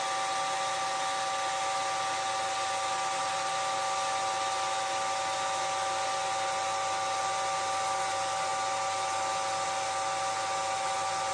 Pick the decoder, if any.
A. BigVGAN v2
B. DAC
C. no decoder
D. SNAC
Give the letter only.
C